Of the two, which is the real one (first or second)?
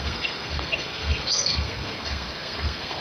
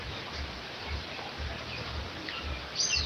second